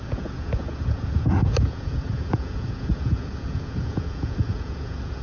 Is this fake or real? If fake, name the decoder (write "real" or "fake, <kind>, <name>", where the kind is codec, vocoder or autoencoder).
fake, vocoder, Vocos